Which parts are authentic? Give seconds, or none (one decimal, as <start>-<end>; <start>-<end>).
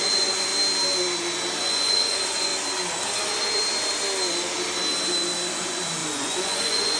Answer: 0.5-1.6; 2.5-5.5